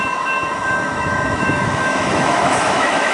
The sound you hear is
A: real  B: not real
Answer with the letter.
B